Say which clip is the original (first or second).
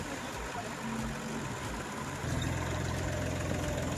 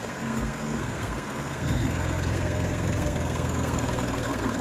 first